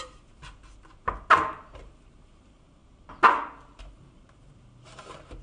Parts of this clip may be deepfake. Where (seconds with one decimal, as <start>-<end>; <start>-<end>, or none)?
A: 0.0-0.4; 1.8-2.8; 3.8-5.4